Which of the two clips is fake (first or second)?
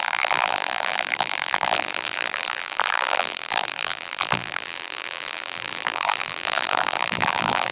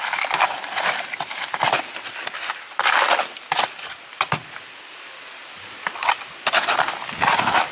first